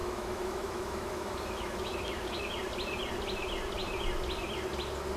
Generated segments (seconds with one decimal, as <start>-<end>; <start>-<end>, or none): 0.0-2.4